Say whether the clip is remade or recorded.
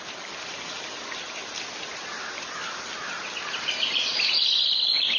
recorded